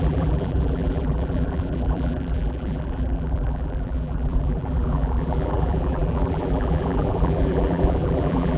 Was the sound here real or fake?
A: fake